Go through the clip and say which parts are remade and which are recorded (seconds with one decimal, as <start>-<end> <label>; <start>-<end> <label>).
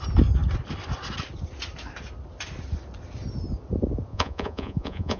0.0-4.1 recorded; 4.1-5.2 remade